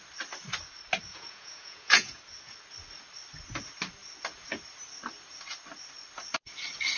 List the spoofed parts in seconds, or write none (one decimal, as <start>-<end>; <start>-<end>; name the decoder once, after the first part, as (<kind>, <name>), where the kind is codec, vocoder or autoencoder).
1.1-2.2 (vocoder, Vocos)